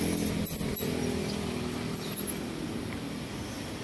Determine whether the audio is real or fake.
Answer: real